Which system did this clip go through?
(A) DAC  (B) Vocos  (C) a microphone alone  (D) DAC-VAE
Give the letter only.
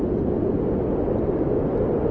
C